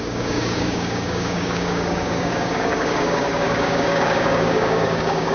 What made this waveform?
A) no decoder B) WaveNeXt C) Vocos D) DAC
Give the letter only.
D